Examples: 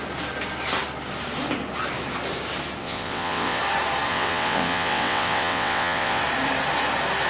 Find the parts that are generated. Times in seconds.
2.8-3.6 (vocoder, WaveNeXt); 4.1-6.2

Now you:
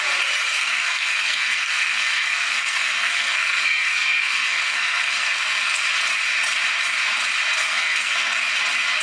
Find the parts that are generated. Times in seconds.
0.5-5.8 (codec, SNAC); 7.6-8.4

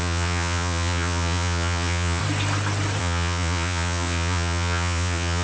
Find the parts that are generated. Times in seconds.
0.0-2.2 (vocoder, Vocos); 3.0-5.4

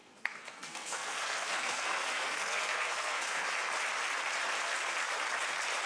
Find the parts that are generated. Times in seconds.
0.0-3.5 (codec, SNAC)

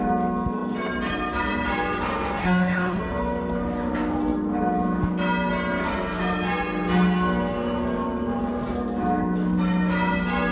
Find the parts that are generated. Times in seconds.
2.4-3.0 (codec, SNAC)

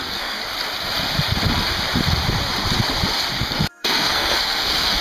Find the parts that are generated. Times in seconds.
0.0-0.4 (codec, SNAC); 3.4-5.0

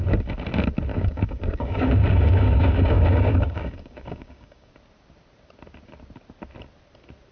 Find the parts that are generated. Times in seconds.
0.9-4.7 (codec, DAC)